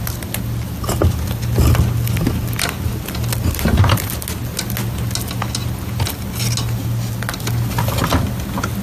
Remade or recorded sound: recorded